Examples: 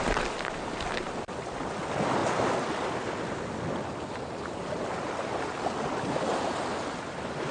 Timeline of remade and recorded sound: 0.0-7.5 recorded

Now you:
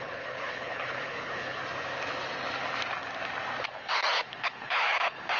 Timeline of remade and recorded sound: 0.0-1.6 remade; 1.6-3.6 recorded; 3.6-5.4 remade

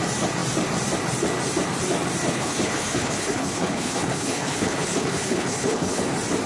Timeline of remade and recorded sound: 0.0-2.3 recorded; 2.3-6.0 remade; 6.0-6.5 recorded

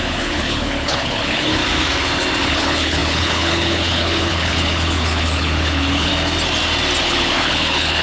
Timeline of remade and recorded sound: 0.0-1.6 remade; 1.6-2.4 recorded; 2.4-6.1 remade; 6.1-7.0 recorded; 7.0-8.0 remade

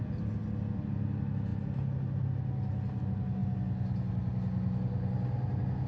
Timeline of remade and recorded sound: 0.0-5.9 recorded